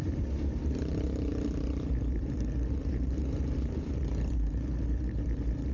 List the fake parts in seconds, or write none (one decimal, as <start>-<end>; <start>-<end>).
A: 0.0-5.7